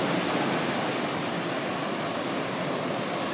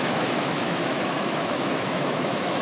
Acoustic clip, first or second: first